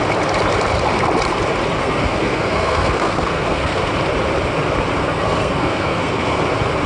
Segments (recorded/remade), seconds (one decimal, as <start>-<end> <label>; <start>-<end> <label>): 0.0-1.8 recorded; 1.8-3.8 remade; 3.8-5.0 recorded; 5.0-6.4 remade; 6.4-6.9 recorded